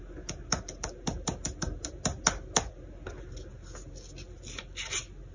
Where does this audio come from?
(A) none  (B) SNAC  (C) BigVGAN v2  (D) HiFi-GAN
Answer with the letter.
A